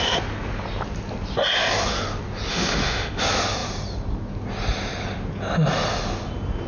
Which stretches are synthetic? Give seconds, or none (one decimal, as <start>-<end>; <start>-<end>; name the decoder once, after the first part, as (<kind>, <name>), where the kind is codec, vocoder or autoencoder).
2.5-3.2 (autoencoder, DAC-VAE)